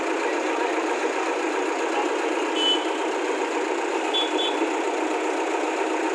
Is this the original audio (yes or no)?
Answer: yes